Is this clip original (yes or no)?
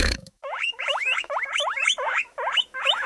no